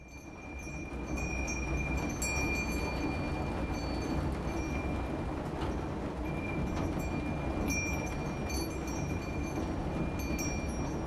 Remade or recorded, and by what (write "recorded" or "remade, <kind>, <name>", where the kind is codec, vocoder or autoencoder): recorded